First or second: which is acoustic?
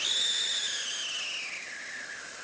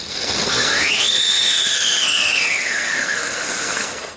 first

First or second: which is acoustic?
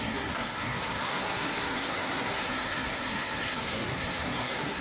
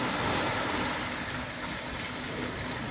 second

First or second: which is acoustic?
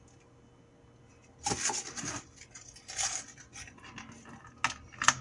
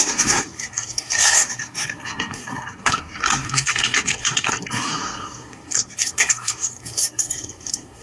first